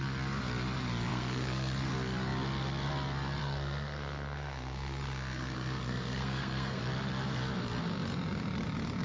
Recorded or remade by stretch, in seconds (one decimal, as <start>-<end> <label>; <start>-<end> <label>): 0.0-1.1 recorded; 1.1-1.9 remade; 1.9-3.4 recorded; 3.4-6.8 remade; 6.8-9.0 recorded